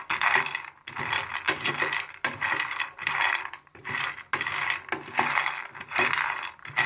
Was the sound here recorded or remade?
recorded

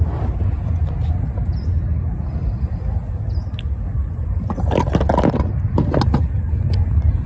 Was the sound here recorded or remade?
recorded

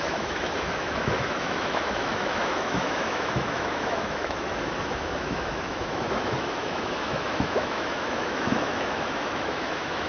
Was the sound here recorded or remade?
remade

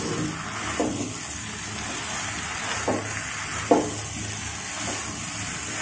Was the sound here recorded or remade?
recorded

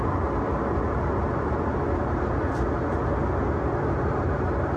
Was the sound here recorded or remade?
recorded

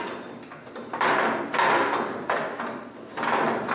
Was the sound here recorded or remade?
recorded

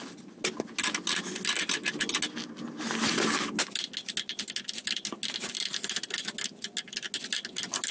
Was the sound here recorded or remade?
recorded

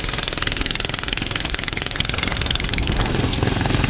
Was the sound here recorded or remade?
remade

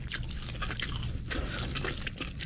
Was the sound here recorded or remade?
recorded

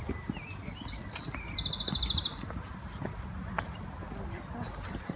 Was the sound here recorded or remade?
recorded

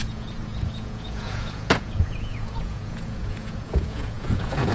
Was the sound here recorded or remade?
remade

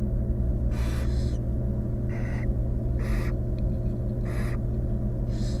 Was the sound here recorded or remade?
recorded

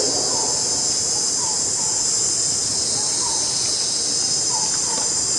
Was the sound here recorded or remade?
recorded